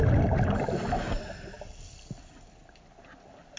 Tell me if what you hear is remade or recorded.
recorded